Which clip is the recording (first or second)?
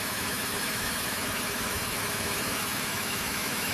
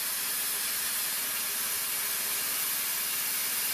second